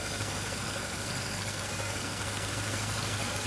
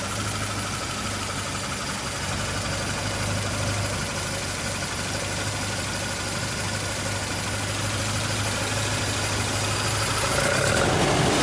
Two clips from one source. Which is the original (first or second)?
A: second